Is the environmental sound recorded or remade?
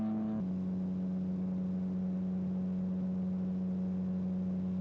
recorded